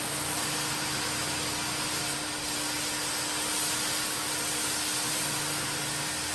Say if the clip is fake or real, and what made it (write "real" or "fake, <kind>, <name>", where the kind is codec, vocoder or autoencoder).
real